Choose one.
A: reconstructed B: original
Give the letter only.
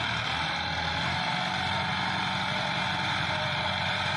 A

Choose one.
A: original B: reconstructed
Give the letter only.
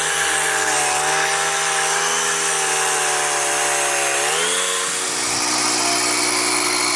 A